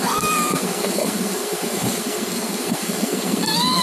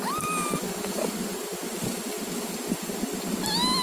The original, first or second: second